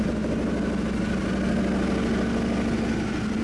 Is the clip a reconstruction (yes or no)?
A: no